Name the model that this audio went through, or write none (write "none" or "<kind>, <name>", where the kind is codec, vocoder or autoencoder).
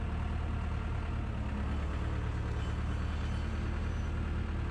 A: none